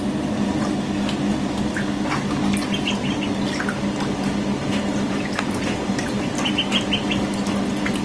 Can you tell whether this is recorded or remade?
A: recorded